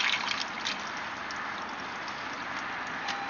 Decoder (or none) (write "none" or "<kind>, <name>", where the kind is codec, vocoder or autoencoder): none